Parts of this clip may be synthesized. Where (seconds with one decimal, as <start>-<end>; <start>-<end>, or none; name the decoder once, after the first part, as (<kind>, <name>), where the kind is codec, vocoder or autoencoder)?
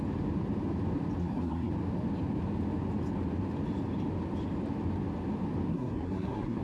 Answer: 1.2-1.7 (codec, SNAC); 5.7-6.6